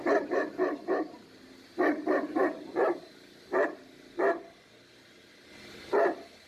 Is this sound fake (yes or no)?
no